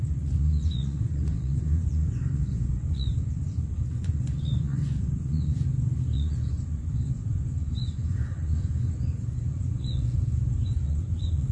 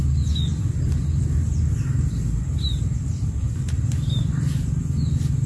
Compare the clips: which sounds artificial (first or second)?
first